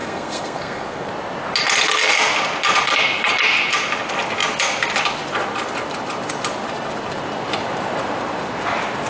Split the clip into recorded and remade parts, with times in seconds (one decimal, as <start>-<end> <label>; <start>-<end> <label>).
0.0-1.1 remade; 1.1-9.1 recorded